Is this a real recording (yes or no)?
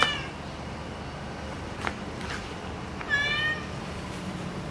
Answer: yes